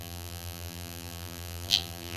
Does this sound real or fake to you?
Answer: fake